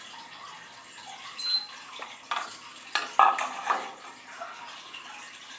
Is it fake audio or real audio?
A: real